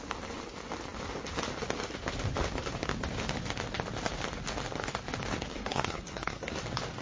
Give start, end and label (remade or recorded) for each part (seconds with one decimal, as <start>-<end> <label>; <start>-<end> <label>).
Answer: 0.0-5.5 recorded; 5.5-6.6 remade; 6.6-7.0 recorded